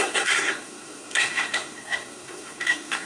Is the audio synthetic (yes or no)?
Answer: yes